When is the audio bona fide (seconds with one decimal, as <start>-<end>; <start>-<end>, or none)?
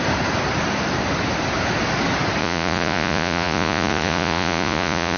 0.0-2.4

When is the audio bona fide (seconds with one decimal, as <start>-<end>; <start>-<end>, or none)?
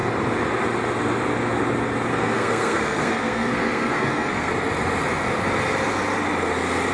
0.0-2.1; 4.5-6.9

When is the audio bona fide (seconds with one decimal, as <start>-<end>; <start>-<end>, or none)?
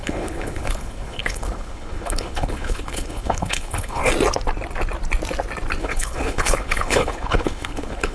4.0-5.8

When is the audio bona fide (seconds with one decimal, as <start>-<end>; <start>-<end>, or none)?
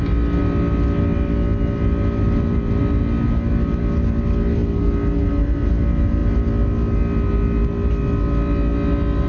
0.0-9.3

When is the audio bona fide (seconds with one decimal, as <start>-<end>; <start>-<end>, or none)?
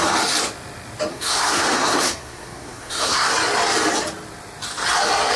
0.0-1.1; 3.3-5.4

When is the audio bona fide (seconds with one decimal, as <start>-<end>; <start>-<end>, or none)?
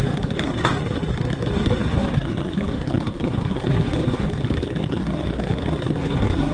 none